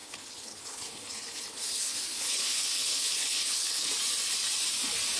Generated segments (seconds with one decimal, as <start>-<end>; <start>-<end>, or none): 0.0-3.9

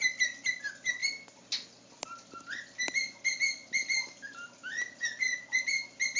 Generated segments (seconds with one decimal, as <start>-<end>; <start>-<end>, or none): none

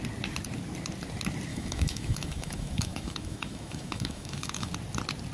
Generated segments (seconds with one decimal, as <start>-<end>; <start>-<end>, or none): 1.5-4.7